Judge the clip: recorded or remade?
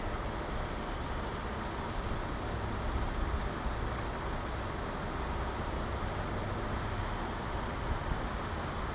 recorded